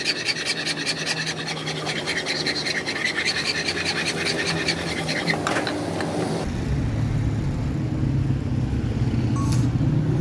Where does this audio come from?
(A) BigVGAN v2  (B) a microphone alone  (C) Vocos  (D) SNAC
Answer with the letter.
B